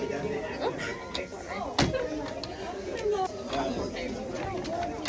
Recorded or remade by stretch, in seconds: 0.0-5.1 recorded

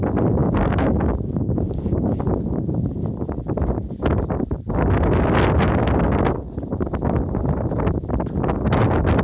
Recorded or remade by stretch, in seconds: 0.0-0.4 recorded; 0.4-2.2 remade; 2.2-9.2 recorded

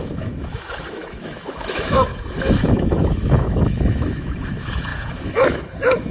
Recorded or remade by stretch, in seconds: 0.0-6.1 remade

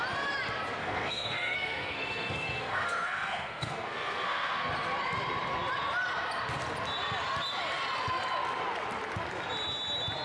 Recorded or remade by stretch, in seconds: 0.0-0.8 recorded; 0.8-4.7 remade; 4.7-10.2 recorded

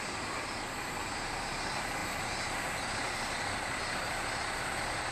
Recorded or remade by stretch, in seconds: 0.0-5.1 recorded

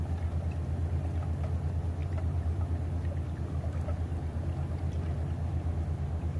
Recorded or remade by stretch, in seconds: 0.0-2.0 recorded; 2.0-2.8 remade; 2.8-6.4 recorded